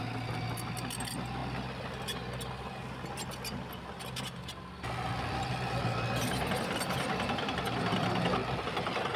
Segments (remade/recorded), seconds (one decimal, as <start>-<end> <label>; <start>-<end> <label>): 0.0-9.2 recorded